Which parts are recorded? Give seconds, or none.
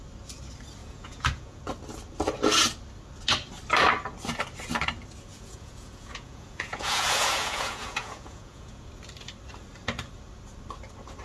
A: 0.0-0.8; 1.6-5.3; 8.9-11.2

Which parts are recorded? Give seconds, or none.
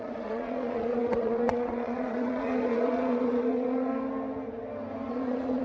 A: 3.9-5.1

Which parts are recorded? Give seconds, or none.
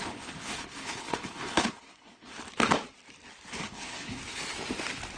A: 2.3-3.6; 4.2-5.2